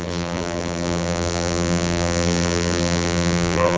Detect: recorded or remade remade